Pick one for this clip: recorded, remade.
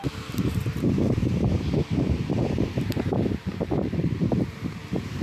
remade